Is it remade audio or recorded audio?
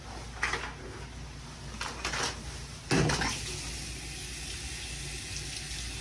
recorded